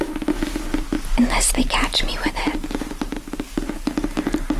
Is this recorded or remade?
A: recorded